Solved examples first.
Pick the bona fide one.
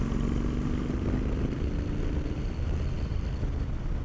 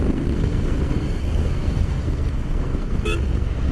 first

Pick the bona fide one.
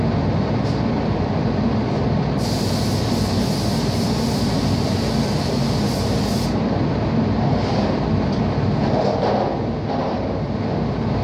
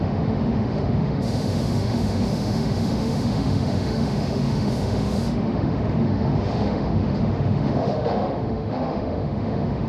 first